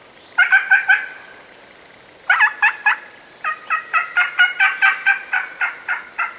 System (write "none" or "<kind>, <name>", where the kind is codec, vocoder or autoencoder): none